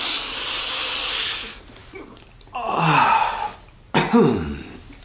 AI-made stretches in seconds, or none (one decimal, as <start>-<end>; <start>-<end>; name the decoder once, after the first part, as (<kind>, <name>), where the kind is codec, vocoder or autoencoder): none